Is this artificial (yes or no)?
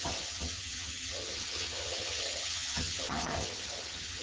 yes